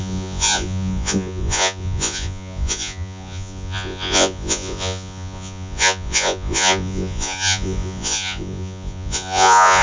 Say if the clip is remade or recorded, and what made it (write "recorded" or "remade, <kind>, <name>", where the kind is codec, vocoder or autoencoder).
remade, vocoder, Vocos